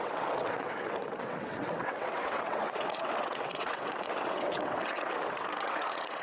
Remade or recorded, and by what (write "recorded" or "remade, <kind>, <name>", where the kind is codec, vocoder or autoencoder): remade, vocoder, WaveNeXt